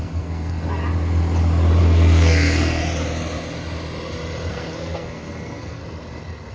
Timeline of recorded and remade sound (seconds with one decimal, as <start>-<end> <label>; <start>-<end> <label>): 0.0-0.8 remade; 0.8-1.8 recorded; 1.8-2.8 remade; 2.8-4.5 recorded; 4.5-5.8 remade; 5.8-6.5 recorded